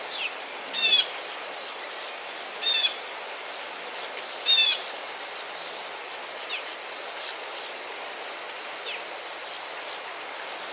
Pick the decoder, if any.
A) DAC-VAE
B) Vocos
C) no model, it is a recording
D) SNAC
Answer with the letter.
C